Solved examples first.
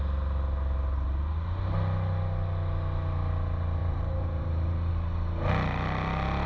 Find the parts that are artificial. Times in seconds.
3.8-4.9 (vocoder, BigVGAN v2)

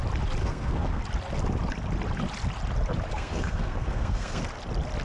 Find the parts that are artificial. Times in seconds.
0.4-1.0 (codec, SNAC); 3.1-4.4

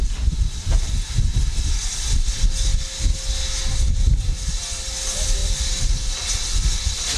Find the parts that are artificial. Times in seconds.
5.4-6.1 (vocoder, BigVGAN v2)